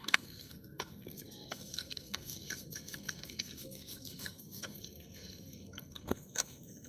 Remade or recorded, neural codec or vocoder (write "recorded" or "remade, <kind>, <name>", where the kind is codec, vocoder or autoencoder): remade, codec, SNAC